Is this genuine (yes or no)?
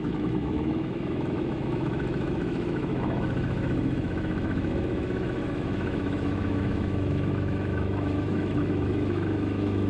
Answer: no